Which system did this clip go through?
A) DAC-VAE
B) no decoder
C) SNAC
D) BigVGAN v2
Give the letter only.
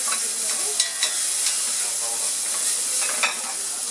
B